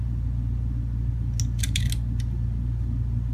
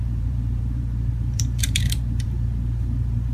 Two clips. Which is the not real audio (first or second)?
second